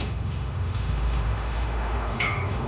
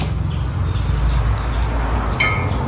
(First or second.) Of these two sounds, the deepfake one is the first